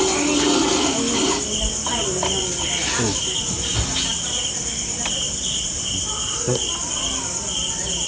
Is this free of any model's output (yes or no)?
yes